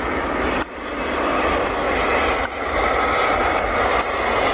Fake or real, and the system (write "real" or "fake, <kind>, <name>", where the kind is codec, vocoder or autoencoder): real